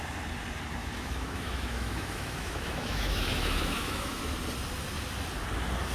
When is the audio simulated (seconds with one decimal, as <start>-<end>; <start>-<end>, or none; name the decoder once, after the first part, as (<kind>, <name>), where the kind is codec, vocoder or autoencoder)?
0.8-4.2 (autoencoder, DAC-VAE)